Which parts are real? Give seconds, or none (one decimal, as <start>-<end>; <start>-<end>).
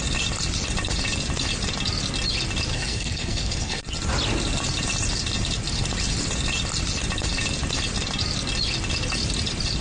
0.0-2.7; 3.8-9.8